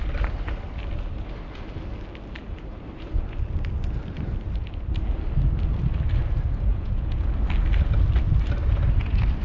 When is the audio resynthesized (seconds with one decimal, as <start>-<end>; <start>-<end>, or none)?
6.7-7.3